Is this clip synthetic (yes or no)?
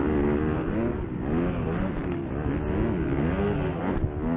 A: no